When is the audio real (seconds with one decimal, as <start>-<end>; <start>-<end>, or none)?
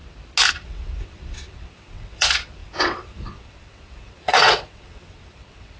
0.0-0.5